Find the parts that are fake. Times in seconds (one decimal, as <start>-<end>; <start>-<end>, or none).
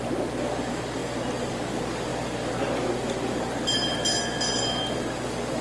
none